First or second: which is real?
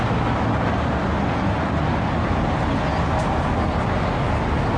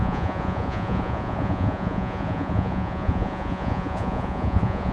first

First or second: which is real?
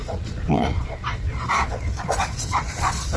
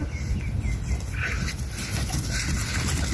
second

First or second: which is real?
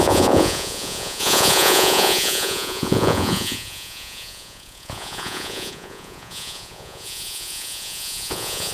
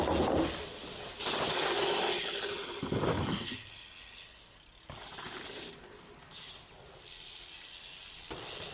second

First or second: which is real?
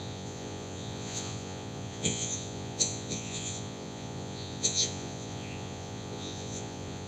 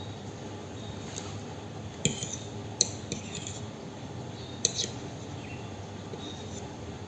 second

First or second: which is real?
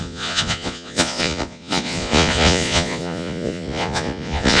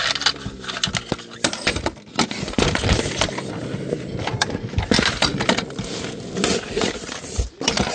second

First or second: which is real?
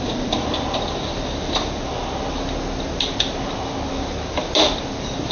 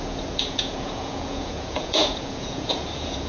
first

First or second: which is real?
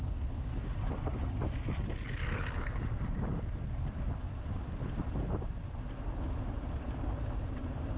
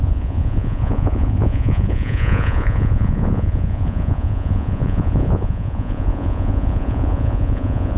first